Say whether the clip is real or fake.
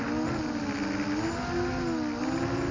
real